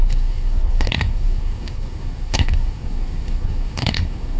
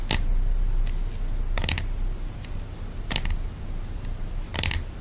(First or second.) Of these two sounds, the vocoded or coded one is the first